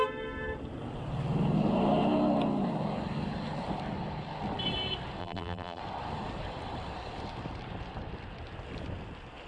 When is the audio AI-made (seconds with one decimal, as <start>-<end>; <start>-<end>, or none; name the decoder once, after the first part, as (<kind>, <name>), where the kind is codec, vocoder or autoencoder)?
5.2-5.8 (vocoder, BigVGAN v2)